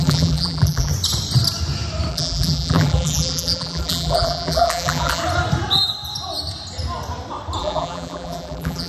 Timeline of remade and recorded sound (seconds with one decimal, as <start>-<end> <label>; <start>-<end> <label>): 0.0-0.9 remade; 0.9-2.1 recorded; 2.1-5.2 remade; 5.2-7.6 recorded; 7.6-8.9 remade